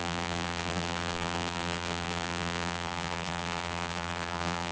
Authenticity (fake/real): fake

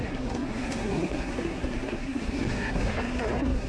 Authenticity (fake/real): fake